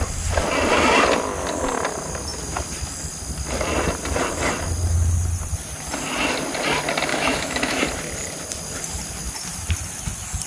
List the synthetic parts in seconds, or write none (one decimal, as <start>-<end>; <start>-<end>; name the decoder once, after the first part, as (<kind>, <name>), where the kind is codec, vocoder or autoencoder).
7.1-7.8 (autoencoder, DAC-VAE)